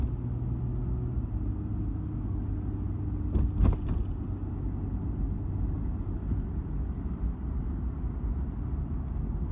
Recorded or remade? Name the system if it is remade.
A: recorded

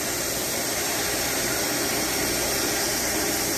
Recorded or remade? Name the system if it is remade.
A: remade, vocoder, BigVGAN v2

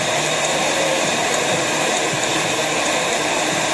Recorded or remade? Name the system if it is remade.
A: remade, vocoder, BigVGAN v2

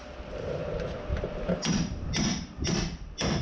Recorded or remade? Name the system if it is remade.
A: remade, vocoder, BigVGAN v2